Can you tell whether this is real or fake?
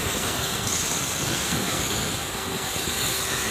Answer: fake